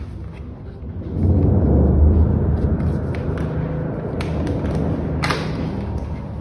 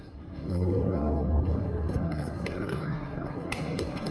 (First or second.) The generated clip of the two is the second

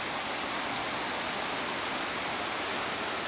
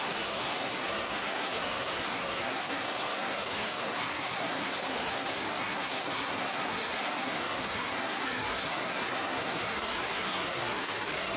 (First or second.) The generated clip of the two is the second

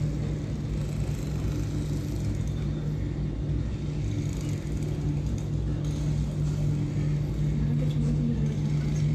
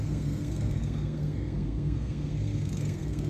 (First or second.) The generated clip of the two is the second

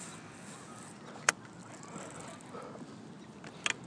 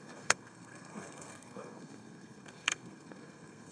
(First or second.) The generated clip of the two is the second